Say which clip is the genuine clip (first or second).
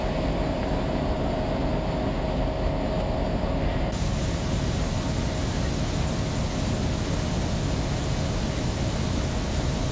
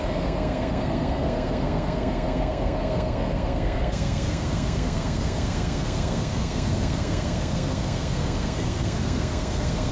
first